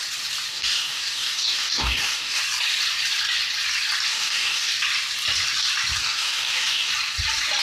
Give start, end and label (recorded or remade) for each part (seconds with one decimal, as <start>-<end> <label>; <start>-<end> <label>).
0.0-0.5 recorded; 0.5-2.4 remade; 2.4-4.1 recorded; 4.1-4.7 remade; 4.7-6.0 recorded; 6.0-6.9 remade; 6.9-7.6 recorded